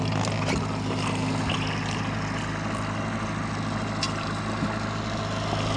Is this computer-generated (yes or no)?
no